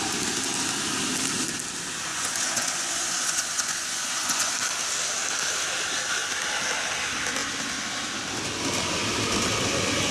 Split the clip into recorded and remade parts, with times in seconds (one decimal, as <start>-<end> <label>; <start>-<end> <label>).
0.0-2.1 recorded; 2.1-4.5 remade; 4.5-10.1 recorded

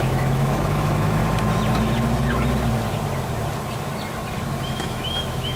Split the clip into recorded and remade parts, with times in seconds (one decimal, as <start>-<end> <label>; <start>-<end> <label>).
0.0-1.2 remade; 1.2-4.6 recorded; 4.6-5.6 remade

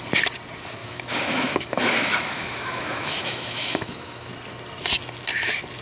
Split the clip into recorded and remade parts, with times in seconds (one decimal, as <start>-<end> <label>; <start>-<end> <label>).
0.0-0.8 recorded; 0.8-4.3 remade; 4.3-5.8 recorded

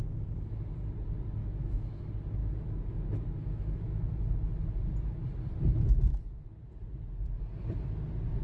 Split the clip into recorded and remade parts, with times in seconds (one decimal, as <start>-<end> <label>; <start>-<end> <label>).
0.0-1.4 recorded; 1.4-2.0 remade; 2.0-2.4 recorded; 2.4-4.1 remade; 4.1-6.1 recorded; 6.1-6.7 remade; 6.7-8.4 recorded